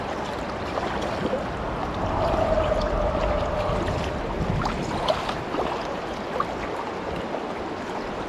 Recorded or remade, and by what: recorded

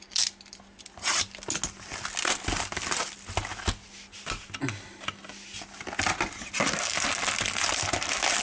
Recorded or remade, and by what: recorded